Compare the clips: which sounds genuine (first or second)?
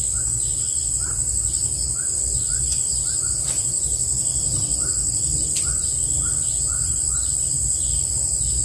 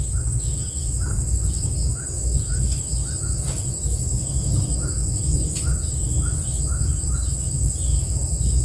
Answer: first